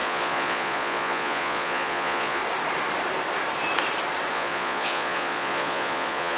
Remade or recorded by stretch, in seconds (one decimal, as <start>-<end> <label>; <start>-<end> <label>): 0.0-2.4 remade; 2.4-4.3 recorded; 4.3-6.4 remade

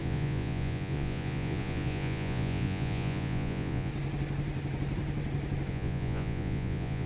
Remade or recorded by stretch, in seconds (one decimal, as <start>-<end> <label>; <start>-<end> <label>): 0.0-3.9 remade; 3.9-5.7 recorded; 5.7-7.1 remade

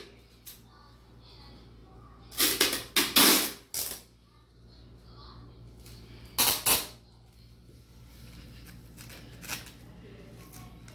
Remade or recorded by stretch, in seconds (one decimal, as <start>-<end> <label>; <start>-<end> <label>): 0.0-10.9 recorded

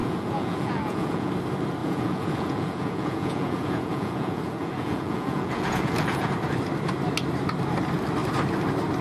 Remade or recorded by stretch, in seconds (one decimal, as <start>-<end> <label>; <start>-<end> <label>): 0.0-1.3 remade; 1.3-1.8 recorded; 1.8-6.3 remade; 6.3-9.0 recorded